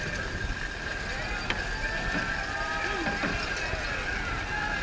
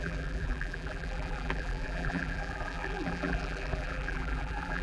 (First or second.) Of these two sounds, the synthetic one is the second